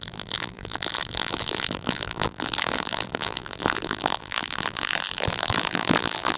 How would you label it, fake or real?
fake